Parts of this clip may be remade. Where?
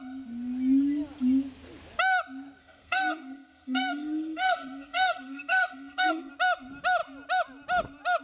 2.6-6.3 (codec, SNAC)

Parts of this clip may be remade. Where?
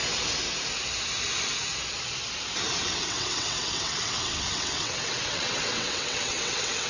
2.8-6.9 (vocoder, WaveNeXt)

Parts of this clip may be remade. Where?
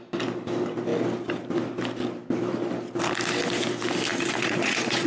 4.1-5.1 (vocoder, Vocos)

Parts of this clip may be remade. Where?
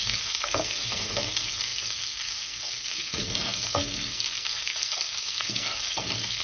0.0-6.4 (codec, SNAC)